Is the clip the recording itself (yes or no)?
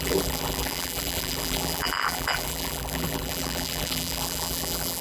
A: no